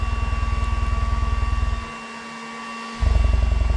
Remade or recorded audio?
recorded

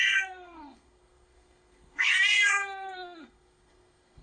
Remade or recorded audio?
remade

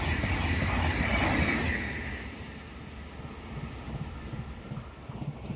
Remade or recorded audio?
recorded